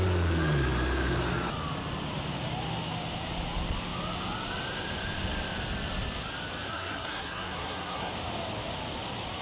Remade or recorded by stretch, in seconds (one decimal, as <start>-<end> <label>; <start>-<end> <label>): 0.0-6.7 recorded; 6.7-8.1 remade; 8.1-9.4 recorded